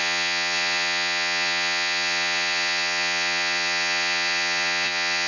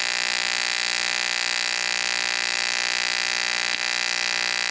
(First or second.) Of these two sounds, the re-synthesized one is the first